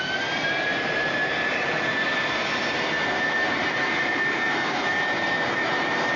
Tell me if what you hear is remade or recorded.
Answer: remade